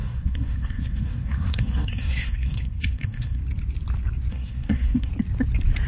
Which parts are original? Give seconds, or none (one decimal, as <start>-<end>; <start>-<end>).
3.4-4.3; 5.1-5.9